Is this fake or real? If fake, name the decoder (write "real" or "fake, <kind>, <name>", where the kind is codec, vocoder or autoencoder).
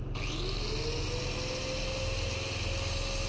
real